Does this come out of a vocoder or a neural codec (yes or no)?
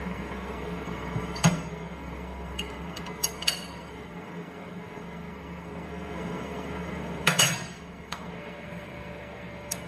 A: yes